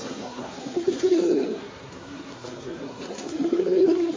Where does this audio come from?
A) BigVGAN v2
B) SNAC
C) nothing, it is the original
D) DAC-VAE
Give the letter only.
B